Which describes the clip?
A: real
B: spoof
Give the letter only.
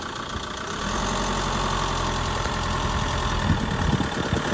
A